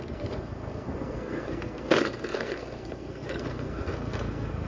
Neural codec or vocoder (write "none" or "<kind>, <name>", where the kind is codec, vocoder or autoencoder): codec, SNAC